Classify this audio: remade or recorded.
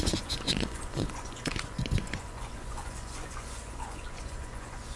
remade